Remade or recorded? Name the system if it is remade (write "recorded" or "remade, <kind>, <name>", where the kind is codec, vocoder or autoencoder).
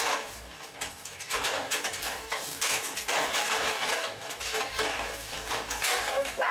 remade, codec, DAC